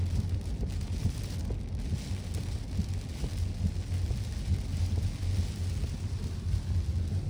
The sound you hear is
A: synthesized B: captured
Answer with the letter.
B